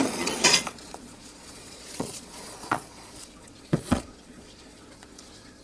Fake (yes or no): yes